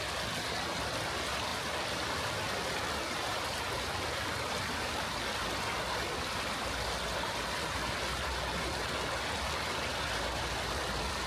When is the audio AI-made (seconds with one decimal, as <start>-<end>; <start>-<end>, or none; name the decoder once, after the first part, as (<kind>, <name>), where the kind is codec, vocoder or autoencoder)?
none